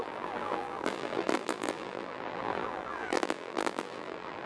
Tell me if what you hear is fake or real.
fake